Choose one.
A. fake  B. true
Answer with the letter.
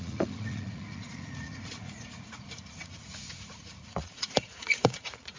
A